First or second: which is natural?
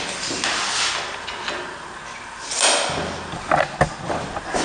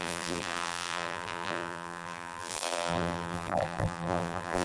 first